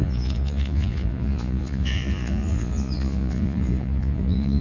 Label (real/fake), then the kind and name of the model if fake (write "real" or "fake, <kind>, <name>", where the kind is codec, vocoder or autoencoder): fake, vocoder, Vocos